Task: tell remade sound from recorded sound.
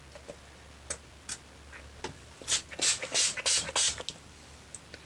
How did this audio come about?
recorded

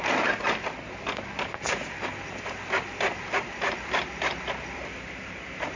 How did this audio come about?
recorded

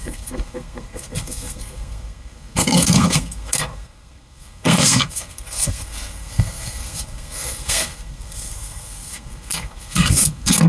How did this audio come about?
remade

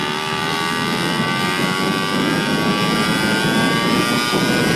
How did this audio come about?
recorded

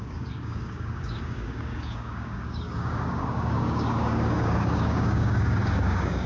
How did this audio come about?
remade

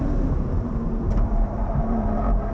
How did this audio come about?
remade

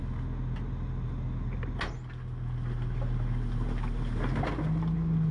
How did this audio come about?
recorded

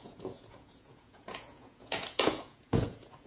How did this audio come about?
remade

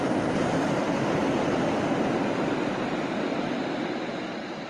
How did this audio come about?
recorded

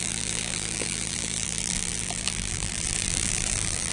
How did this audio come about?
remade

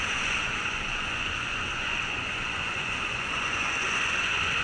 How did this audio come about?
remade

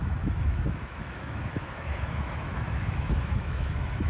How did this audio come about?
remade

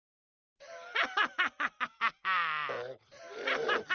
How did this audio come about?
recorded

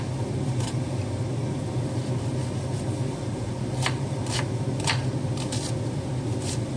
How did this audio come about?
recorded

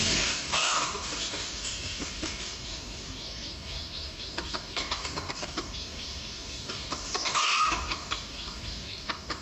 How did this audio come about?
remade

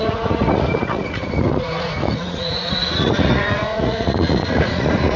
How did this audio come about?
remade